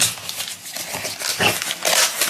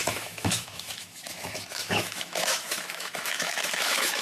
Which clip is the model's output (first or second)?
second